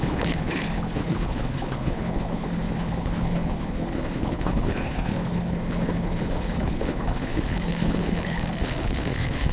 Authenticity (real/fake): fake